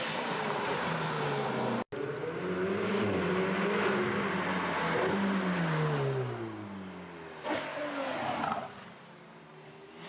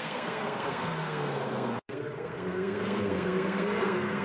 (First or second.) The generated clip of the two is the second